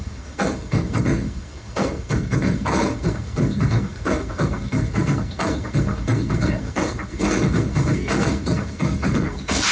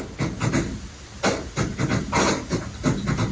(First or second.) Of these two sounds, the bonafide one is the second